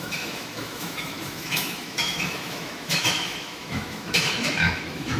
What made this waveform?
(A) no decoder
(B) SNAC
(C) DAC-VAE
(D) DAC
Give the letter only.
C